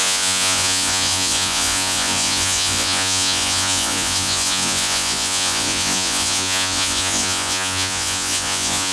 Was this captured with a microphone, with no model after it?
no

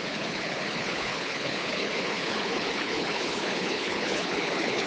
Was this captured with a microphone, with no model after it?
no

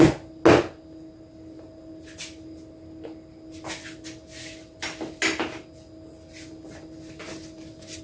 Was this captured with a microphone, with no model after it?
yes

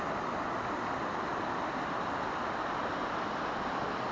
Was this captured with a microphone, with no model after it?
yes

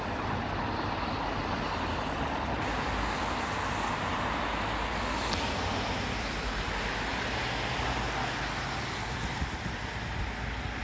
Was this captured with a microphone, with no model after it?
yes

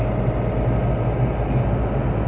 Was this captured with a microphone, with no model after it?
yes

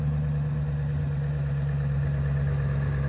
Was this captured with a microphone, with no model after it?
yes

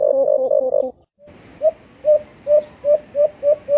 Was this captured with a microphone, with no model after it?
yes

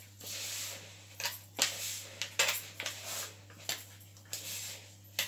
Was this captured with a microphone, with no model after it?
yes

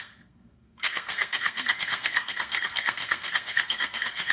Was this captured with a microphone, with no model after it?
no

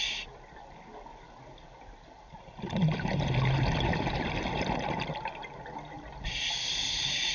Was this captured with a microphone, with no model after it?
yes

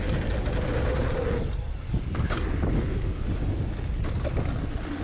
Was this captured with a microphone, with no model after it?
yes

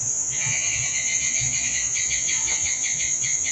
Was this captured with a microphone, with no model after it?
no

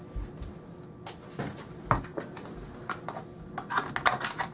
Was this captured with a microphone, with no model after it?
yes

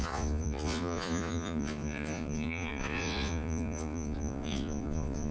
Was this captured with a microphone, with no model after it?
no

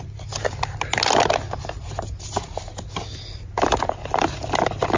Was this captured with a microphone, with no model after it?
yes